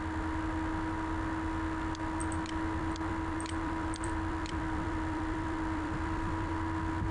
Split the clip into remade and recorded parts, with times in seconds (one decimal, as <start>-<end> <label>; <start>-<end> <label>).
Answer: 0.0-2.2 recorded; 2.2-6.5 remade; 6.5-7.1 recorded